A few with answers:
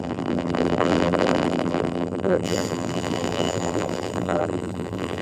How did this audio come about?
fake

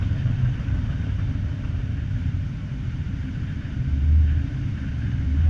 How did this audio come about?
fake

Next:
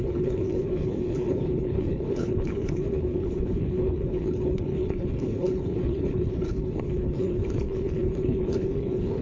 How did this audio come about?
fake